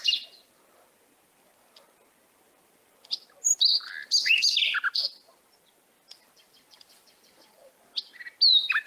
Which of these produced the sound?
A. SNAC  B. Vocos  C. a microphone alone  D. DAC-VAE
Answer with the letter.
C